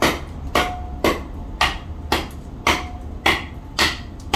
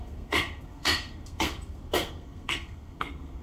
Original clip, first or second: first